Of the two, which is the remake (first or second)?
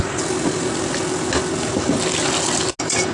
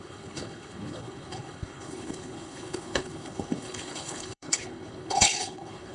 second